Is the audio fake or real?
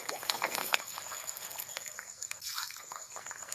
fake